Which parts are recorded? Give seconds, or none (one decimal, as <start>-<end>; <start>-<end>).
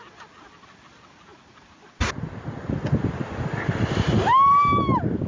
0.0-5.3